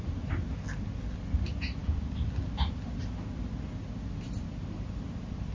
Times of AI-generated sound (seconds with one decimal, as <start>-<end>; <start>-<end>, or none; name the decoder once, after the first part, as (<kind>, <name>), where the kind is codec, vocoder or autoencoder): none